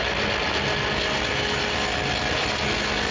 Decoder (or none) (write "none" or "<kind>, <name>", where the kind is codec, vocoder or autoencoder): none